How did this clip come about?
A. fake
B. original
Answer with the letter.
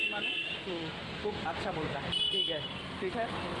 A